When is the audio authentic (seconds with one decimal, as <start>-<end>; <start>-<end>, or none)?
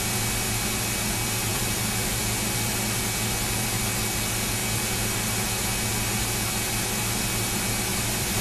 0.0-1.5; 2.2-7.9